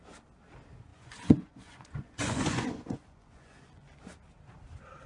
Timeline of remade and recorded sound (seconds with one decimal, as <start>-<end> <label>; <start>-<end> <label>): 0.0-0.9 recorded; 0.9-4.0 remade; 4.0-5.1 recorded